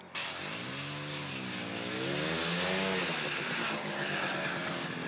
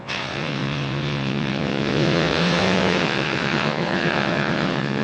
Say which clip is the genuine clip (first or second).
first